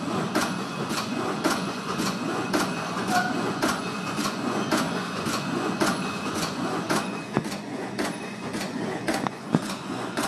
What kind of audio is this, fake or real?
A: fake